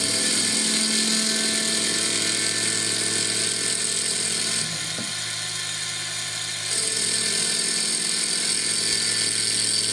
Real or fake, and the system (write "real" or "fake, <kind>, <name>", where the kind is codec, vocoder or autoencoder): real